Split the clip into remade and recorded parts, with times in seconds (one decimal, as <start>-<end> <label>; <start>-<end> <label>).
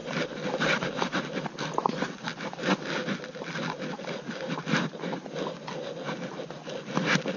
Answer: 0.0-7.4 recorded